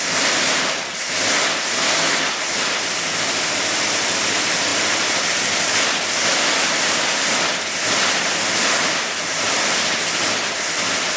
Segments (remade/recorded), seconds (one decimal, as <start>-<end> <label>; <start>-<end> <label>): 0.0-11.2 recorded